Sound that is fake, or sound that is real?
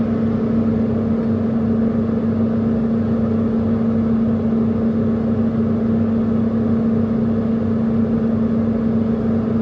real